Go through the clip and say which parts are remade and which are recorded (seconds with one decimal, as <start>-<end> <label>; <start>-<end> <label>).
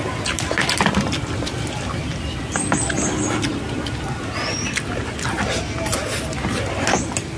0.0-7.4 recorded